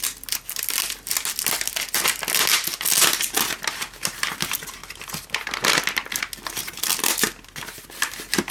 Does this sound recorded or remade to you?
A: recorded